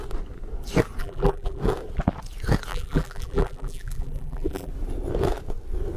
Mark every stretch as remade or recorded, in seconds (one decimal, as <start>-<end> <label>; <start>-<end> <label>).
0.0-1.0 recorded; 1.0-1.6 remade; 1.6-2.7 recorded; 2.7-4.7 remade; 4.7-6.0 recorded